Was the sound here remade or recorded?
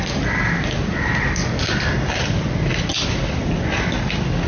recorded